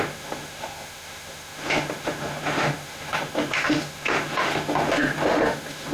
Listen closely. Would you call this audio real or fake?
fake